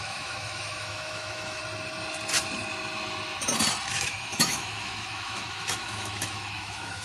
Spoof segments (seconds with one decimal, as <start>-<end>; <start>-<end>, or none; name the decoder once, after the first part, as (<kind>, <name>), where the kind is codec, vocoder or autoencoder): 0.0-1.6 (autoencoder, DAC-VAE); 3.9-7.0

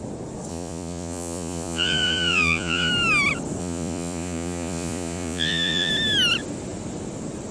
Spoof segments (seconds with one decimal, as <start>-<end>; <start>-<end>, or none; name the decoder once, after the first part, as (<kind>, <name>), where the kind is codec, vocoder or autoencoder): 0.5-2.9 (vocoder, Vocos); 3.6-5.9

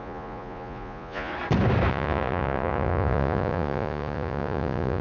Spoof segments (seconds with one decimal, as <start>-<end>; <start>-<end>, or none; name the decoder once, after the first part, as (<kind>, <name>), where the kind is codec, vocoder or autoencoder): 0.0-1.3 (vocoder, Vocos); 1.9-5.0

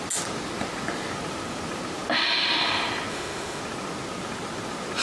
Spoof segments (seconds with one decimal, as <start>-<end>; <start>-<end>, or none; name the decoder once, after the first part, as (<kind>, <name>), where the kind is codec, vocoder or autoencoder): 3.1-3.6 (autoencoder, DAC-VAE)